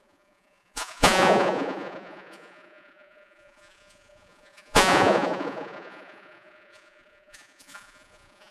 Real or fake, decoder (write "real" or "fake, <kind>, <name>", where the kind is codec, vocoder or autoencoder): fake, vocoder, Vocos